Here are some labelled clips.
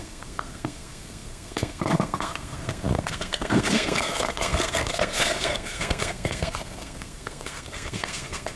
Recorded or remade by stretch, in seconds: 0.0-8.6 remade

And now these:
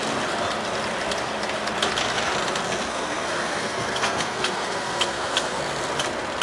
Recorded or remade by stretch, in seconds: 0.0-2.9 recorded; 2.9-5.6 remade; 5.6-6.4 recorded